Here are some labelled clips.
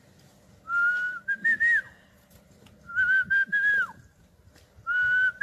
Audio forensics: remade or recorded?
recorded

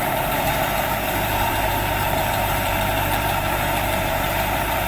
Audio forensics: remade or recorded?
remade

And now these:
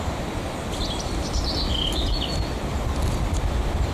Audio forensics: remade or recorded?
recorded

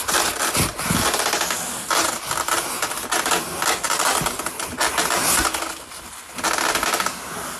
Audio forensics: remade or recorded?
recorded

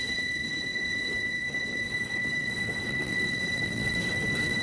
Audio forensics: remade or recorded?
remade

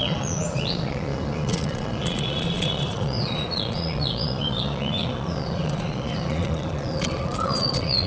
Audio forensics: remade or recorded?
remade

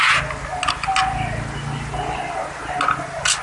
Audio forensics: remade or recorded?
recorded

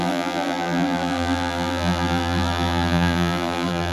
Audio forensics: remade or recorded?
remade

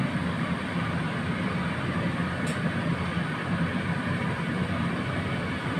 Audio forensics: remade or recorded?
recorded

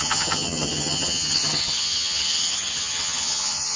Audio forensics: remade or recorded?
remade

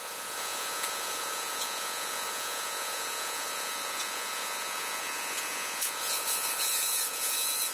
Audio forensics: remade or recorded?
remade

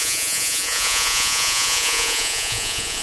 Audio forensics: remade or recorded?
remade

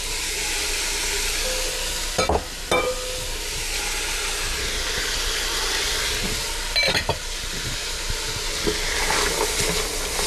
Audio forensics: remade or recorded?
recorded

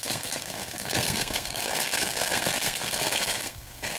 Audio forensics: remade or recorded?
remade